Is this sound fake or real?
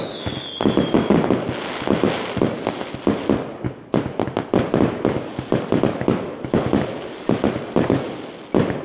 real